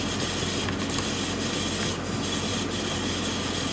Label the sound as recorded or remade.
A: recorded